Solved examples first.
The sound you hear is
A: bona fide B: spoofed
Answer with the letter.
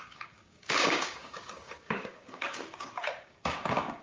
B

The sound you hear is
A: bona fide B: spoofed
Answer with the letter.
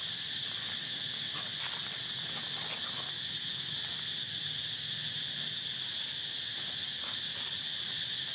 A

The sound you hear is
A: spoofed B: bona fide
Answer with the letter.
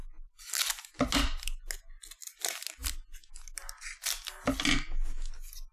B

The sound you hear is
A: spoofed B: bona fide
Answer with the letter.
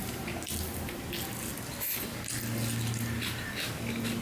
B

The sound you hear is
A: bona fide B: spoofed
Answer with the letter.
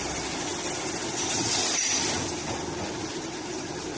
A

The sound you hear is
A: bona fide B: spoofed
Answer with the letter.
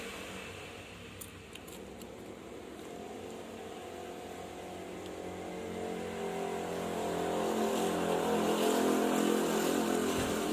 A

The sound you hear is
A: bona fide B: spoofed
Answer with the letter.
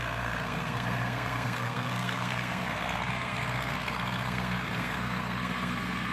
B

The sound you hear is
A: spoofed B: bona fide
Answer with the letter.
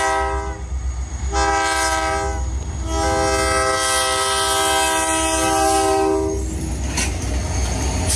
B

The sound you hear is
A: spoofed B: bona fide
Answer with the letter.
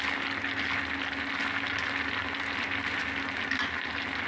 B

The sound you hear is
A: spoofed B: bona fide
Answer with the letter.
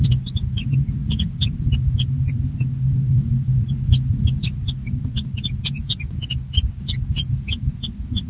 B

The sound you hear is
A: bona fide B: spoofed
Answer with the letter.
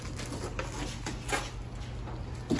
A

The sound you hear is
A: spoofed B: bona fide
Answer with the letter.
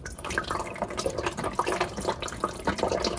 A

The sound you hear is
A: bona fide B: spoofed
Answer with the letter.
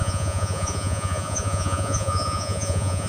B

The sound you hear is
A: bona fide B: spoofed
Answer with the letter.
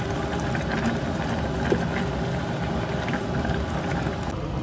A